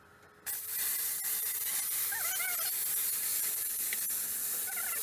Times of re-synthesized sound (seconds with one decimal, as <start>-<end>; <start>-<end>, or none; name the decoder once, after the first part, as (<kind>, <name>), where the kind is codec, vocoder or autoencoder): 0.9-1.7 (vocoder, BigVGAN v2); 3.3-5.0

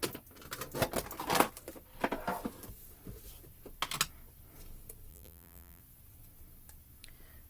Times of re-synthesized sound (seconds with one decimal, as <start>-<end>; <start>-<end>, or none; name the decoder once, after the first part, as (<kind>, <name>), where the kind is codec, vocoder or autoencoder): 5.1-5.8 (vocoder, BigVGAN v2)

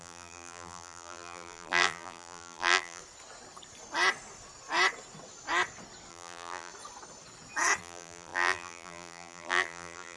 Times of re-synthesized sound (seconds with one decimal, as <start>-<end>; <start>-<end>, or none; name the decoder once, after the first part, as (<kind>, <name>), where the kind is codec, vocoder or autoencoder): 0.0-3.0 (vocoder, BigVGAN v2); 6.1-6.7; 7.8-10.2

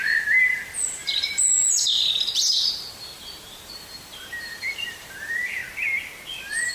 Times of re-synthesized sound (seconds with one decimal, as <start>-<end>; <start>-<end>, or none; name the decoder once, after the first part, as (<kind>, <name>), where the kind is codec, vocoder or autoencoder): 0.0-5.6 (vocoder, BigVGAN v2); 6.3-6.7

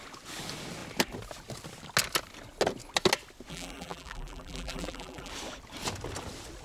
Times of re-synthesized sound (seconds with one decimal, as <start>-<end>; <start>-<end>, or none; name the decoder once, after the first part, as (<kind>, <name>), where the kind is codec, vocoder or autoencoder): 3.5-5.3 (vocoder, BigVGAN v2)

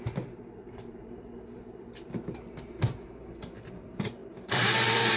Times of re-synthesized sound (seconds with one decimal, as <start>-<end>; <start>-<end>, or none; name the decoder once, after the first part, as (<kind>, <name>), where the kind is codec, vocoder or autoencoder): 0.6-3.7 (vocoder, BigVGAN v2); 4.2-5.2

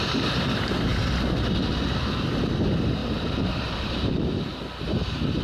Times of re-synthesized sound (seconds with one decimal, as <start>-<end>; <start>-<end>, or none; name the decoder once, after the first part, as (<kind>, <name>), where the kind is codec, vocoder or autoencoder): 3.0-5.4 (vocoder, BigVGAN v2)

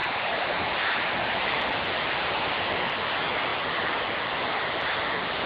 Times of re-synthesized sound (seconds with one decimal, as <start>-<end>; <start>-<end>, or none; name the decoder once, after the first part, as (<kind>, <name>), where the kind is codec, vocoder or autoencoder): 0.0-0.7 (vocoder, BigVGAN v2)